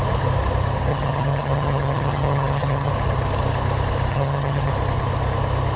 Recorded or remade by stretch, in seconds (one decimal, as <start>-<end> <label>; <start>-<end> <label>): 0.0-0.9 recorded; 0.9-2.9 remade; 2.9-4.1 recorded; 4.1-4.7 remade; 4.7-5.8 recorded